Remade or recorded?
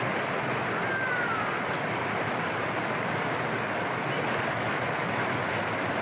recorded